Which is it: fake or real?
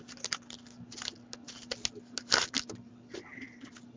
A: real